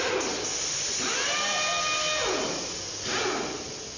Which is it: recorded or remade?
recorded